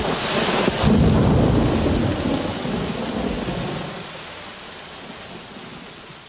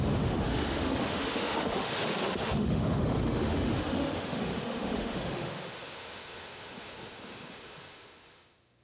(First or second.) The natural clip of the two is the first